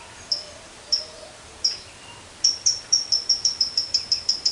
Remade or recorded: remade